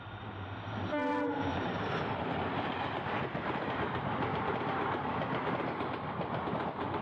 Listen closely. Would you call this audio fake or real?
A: real